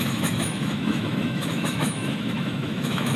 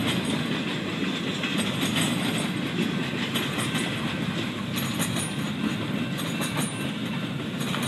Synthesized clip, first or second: first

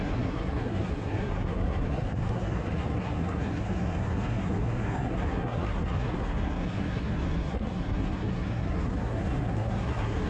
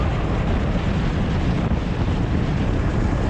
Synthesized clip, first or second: first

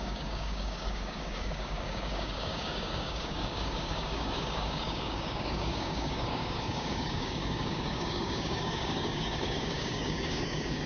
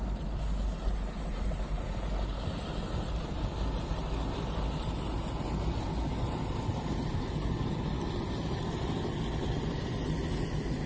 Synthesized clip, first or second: first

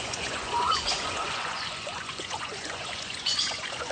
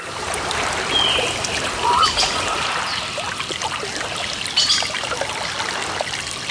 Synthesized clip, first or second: first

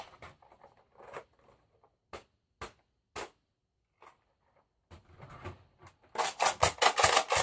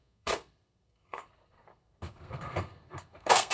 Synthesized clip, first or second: second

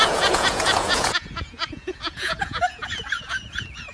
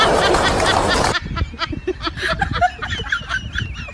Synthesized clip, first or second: first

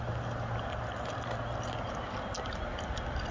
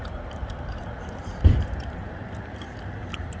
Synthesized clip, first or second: second